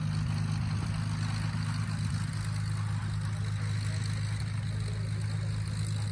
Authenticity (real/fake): real